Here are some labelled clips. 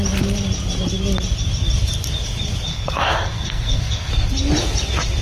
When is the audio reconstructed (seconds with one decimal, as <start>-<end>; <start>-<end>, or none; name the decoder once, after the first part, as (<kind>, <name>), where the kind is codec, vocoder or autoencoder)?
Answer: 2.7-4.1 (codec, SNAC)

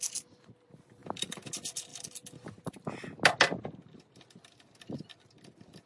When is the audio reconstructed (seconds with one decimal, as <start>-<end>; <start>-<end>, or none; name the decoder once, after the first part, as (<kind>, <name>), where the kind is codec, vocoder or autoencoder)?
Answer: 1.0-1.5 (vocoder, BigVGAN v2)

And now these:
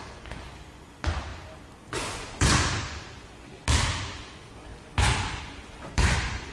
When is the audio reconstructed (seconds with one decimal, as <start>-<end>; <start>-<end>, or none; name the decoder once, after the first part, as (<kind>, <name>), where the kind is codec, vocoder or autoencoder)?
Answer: 0.0-1.3 (vocoder, Vocos); 1.9-3.5; 4.1-6.5